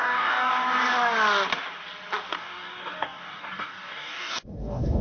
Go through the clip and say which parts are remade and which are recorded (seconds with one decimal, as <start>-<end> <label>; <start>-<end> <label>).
0.0-0.5 remade; 0.5-2.4 recorded; 2.4-5.0 remade